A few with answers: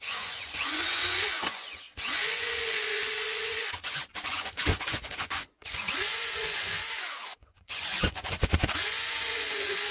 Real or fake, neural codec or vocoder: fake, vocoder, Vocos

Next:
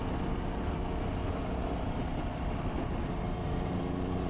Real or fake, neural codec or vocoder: real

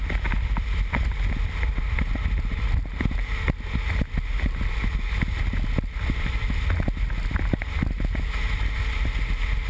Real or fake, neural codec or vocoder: real